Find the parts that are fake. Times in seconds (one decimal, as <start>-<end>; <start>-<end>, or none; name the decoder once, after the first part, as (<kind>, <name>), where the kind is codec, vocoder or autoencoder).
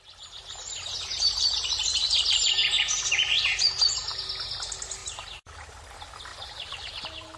5.0-5.8 (vocoder, BigVGAN v2)